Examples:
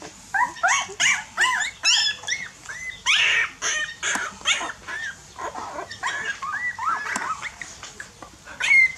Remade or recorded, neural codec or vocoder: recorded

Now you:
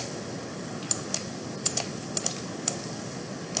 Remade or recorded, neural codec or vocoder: recorded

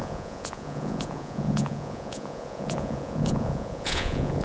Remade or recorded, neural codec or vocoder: remade, vocoder, Vocos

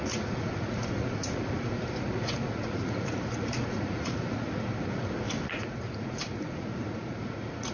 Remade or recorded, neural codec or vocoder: remade, vocoder, Vocos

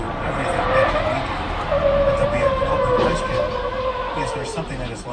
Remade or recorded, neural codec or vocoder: recorded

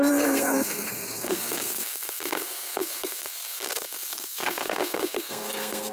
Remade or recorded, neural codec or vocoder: remade, codec, SNAC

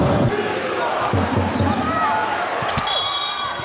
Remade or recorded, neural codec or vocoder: recorded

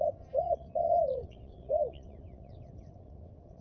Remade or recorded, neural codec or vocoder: remade, vocoder, WaveNeXt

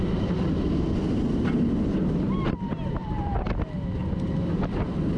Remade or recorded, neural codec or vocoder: recorded